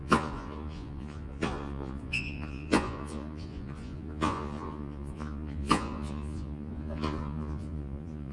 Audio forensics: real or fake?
fake